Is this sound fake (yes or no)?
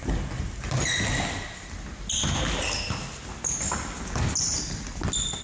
no